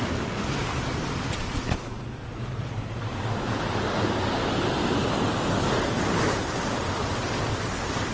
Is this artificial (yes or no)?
no